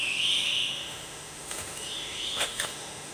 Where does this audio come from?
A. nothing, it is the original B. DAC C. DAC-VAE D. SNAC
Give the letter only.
C